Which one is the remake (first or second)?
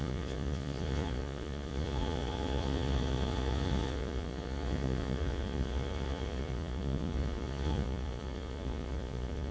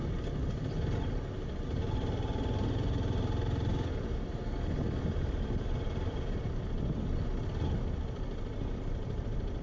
first